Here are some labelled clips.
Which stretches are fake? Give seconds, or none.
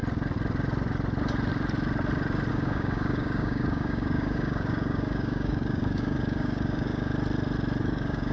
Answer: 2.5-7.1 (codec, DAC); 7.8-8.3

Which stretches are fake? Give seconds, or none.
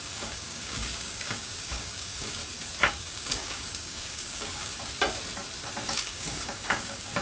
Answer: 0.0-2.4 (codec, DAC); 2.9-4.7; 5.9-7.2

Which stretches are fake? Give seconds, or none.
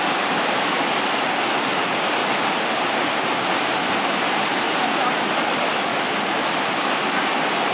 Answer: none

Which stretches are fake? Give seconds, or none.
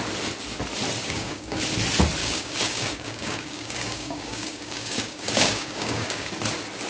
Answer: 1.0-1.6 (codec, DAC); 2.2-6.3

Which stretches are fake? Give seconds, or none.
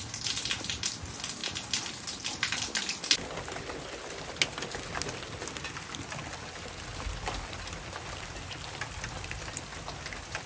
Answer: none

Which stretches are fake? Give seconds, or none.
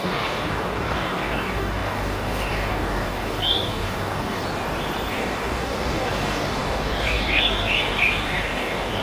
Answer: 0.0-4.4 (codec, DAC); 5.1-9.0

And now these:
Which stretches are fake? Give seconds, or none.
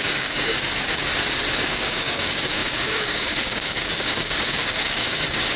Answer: 0.0-1.0 (codec, DAC); 1.6-5.6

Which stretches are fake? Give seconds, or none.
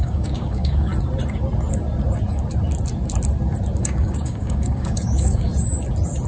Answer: 0.0-0.9 (codec, DAC); 3.8-5.5